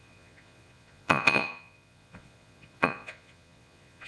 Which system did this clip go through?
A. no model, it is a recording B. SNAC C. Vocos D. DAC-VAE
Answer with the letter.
C